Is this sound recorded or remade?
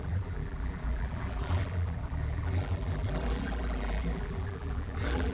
remade